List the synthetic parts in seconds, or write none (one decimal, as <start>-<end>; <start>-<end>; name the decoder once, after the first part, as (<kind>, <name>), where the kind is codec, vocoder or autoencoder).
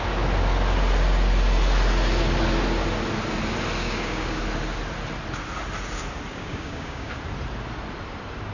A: 3.8-4.4 (codec, DAC); 6.3-7.1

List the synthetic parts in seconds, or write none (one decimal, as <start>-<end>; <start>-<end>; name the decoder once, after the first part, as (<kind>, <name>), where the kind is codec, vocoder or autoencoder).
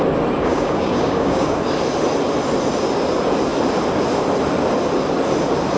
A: 0.4-1.6 (codec, DAC)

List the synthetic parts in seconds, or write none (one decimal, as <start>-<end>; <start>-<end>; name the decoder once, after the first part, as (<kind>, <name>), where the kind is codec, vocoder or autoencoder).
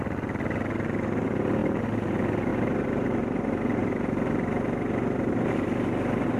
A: none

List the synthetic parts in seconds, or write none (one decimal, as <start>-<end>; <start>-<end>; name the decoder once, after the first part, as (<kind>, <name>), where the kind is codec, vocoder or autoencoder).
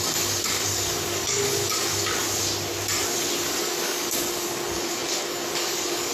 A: 0.0-2.2 (codec, DAC); 3.6-6.1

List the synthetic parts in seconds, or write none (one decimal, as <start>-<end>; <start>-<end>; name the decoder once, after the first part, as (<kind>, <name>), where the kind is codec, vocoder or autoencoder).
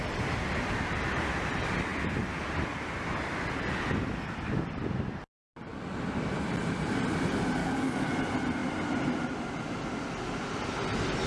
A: 7.6-8.1 (codec, DAC)